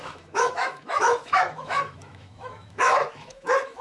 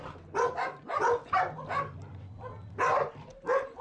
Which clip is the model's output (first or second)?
first